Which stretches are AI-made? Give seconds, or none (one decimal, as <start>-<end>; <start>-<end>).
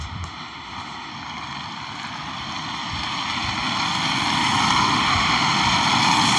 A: 0.0-1.1; 4.9-5.6